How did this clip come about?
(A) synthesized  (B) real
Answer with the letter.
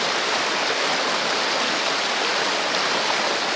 B